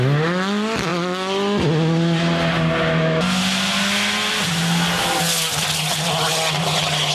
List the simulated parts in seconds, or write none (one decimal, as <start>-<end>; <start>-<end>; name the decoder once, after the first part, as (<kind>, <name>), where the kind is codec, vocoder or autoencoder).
none